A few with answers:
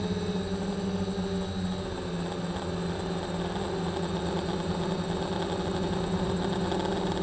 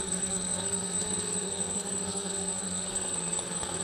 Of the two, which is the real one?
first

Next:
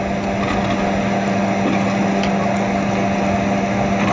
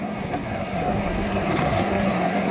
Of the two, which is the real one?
first